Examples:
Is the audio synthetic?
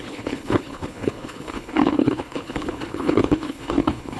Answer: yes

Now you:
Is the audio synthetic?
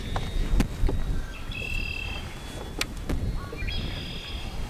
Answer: no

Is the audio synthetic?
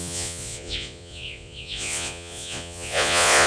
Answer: yes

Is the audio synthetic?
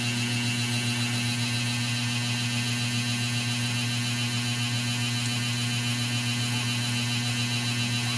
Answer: no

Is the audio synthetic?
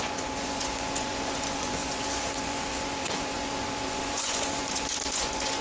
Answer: yes